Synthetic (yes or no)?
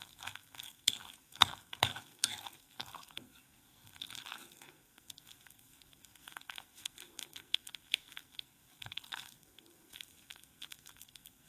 yes